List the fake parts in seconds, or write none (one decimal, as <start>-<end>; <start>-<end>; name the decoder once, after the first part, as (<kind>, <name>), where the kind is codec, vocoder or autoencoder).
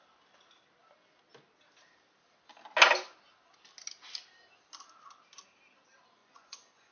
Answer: 6.2-6.9 (vocoder, Vocos)